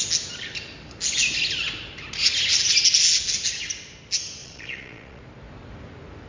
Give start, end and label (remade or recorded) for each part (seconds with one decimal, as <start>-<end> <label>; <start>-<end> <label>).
0.0-4.4 recorded; 4.4-5.2 remade; 5.2-6.3 recorded